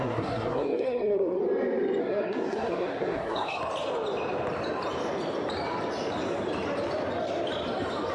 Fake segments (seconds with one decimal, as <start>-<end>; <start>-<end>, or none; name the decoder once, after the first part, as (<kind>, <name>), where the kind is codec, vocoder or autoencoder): 0.0-1.4 (codec, SNAC); 2.0-3.6